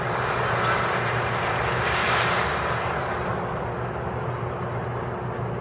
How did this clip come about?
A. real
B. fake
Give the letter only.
A